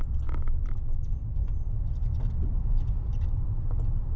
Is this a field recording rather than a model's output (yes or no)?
yes